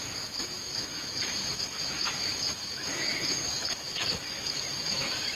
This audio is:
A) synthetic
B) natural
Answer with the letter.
A